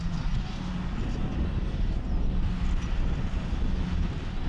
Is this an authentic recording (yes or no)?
yes